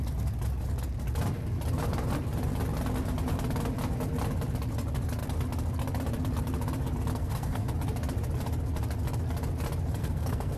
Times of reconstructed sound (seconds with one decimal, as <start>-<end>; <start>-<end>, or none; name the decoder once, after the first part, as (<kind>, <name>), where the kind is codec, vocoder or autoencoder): 7.1-7.7 (codec, SNAC); 10.0-10.6